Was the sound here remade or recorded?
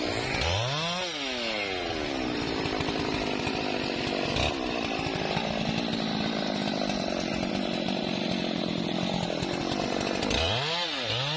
recorded